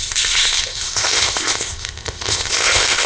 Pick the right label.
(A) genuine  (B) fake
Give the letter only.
B